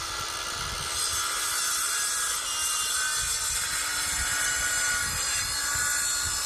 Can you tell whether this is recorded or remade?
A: recorded